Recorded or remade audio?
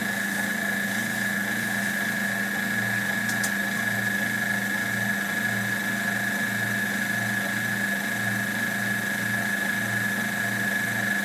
recorded